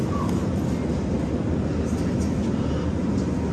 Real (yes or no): yes